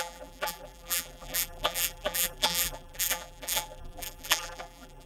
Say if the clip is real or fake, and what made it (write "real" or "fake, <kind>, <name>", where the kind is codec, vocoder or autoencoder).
fake, vocoder, BigVGAN v2